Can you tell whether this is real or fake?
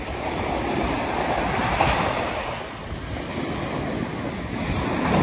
real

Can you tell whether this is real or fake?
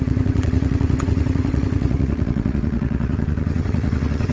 fake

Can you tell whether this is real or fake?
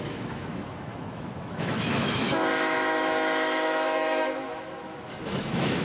fake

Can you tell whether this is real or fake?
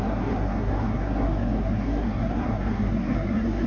fake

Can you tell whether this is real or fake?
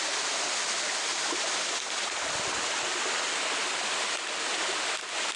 real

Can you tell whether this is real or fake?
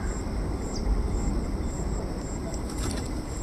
real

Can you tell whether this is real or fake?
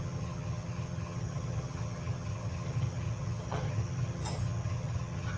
fake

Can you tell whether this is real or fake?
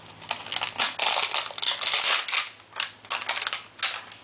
real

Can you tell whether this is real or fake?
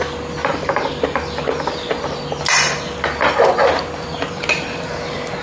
real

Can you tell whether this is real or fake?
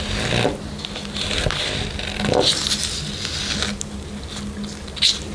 real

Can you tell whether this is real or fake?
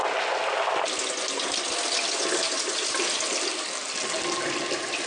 real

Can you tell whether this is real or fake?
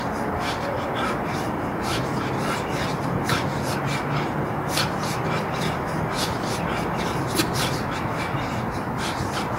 real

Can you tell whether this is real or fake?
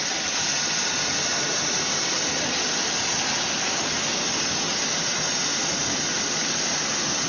real